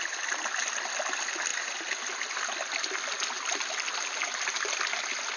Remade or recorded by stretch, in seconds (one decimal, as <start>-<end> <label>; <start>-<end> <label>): 0.0-5.4 recorded